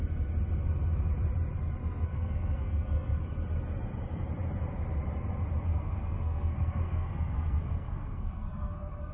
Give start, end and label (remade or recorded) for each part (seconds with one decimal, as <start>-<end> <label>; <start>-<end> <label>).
0.0-1.8 recorded; 1.8-3.2 remade; 3.2-5.7 recorded; 5.7-9.1 remade